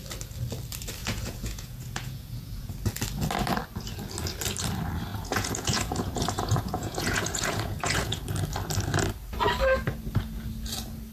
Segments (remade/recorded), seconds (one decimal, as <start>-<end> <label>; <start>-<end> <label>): 0.0-1.0 recorded; 1.0-2.7 remade; 2.7-5.1 recorded; 5.1-8.2 remade; 8.2-11.1 recorded